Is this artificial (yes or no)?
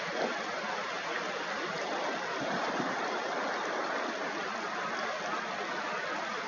no